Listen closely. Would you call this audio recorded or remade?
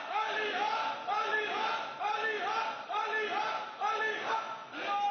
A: recorded